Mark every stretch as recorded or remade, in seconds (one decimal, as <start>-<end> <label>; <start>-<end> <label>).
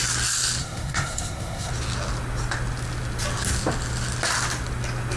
0.0-0.6 recorded; 0.6-1.7 remade; 1.7-5.2 recorded